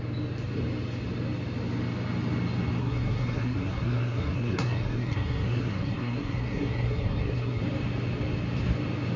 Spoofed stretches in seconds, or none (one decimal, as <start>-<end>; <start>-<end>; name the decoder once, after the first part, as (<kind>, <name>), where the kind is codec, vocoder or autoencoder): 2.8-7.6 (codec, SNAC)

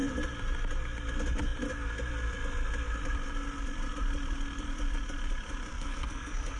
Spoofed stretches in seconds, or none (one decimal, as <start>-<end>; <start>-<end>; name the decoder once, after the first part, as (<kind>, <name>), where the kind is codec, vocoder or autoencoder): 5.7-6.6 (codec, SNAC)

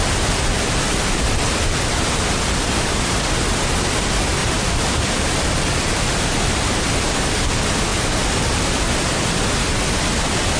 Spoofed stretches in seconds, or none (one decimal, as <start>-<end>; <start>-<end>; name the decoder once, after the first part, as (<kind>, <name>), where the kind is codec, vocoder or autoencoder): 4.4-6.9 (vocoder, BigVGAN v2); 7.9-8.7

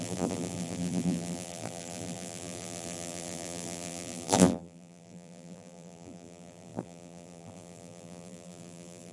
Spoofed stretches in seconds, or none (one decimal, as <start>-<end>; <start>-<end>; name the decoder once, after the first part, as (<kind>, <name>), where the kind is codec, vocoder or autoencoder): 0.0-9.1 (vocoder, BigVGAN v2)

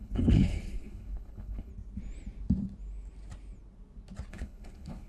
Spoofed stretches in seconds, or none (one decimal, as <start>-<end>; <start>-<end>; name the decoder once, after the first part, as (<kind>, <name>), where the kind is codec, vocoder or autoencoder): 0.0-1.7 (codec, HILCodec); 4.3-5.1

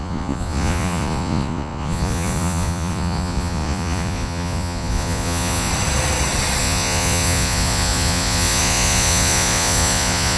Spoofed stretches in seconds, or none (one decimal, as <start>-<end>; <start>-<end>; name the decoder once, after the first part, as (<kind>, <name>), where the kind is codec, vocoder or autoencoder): 0.0-5.7 (vocoder, Vocos); 6.6-10.4

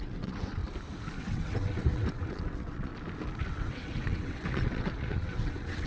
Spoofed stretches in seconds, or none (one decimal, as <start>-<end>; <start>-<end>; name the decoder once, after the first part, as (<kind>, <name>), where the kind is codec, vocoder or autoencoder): 0.0-0.6 (vocoder, WaveNeXt); 1.2-2.9; 3.5-5.9